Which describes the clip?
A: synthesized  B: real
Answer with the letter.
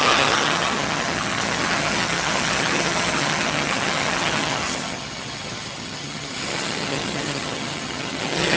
A